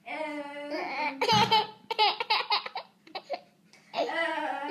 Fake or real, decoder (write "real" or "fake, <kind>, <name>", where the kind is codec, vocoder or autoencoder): real